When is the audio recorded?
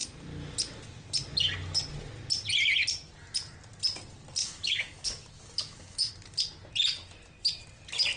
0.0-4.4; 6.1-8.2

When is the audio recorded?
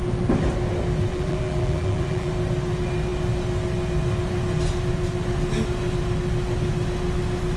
0.0-1.1; 2.3-7.6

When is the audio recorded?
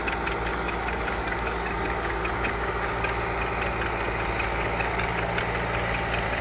0.0-0.5; 3.2-4.5; 5.4-6.4